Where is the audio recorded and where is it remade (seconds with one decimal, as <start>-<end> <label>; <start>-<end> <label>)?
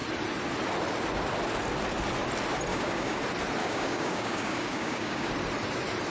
0.0-2.7 recorded; 2.7-3.2 remade; 3.2-3.6 recorded; 3.6-5.3 remade; 5.3-6.1 recorded